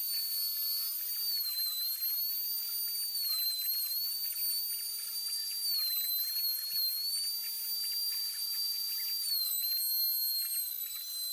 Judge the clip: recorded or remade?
recorded